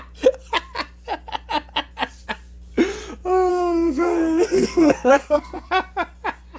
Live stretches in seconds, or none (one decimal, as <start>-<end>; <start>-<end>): 0.0-3.5; 5.7-6.6